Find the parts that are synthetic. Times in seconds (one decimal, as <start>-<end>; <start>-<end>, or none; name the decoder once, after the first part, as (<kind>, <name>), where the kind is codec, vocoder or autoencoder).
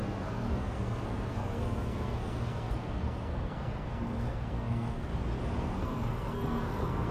0.0-5.1 (codec, SNAC); 5.6-7.1